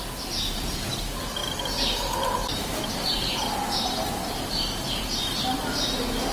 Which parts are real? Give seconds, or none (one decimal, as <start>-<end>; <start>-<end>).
0.0-6.3